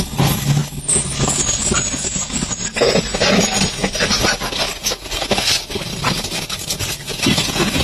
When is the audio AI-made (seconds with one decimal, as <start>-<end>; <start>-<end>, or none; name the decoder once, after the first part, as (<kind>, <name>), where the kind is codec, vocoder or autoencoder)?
none

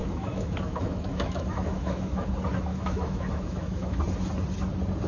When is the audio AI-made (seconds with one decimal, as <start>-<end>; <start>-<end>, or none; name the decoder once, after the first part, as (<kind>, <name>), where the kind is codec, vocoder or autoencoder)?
0.0-2.3 (autoencoder, DAC-VAE); 2.7-4.0

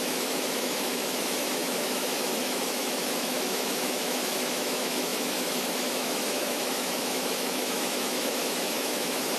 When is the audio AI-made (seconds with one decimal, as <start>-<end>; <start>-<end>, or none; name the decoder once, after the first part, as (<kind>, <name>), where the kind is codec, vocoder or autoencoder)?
0.0-9.4 (autoencoder, DAC-VAE)

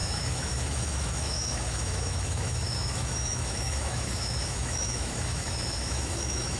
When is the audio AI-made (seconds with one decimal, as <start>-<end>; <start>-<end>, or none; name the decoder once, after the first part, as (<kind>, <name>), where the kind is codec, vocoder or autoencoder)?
0.0-6.6 (autoencoder, DAC-VAE)